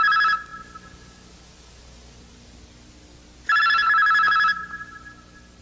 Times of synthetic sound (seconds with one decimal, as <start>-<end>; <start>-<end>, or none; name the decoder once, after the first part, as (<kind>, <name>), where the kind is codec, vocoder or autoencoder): none